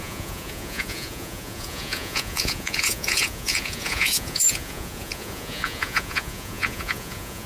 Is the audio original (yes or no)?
no